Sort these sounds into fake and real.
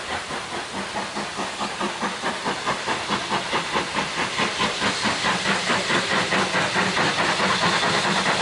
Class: fake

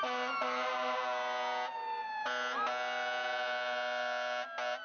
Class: real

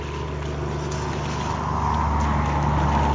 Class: real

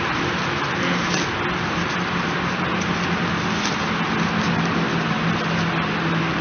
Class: real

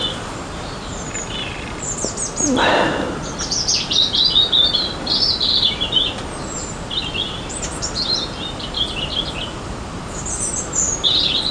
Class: fake